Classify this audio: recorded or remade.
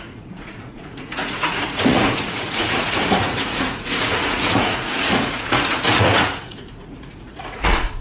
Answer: remade